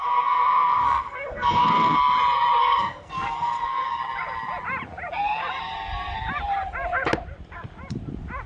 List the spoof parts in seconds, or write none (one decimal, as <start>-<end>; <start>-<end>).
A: 0.0-2.0; 2.6-4.0